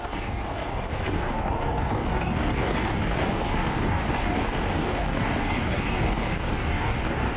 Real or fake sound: fake